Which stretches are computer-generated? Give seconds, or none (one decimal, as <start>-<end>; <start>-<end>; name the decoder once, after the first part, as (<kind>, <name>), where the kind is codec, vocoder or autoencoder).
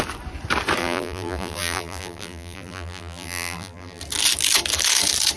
0.8-4.0 (vocoder, BigVGAN v2)